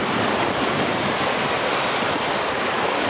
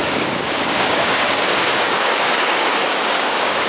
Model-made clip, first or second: second